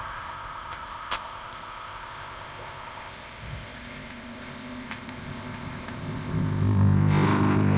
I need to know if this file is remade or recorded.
remade